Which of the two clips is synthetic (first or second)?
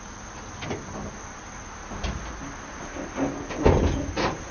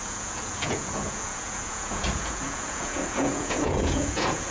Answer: second